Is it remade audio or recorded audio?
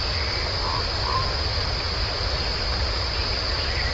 recorded